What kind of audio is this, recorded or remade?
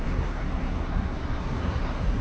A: remade